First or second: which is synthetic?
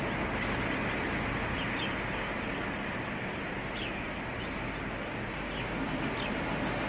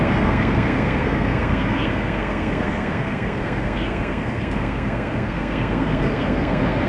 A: second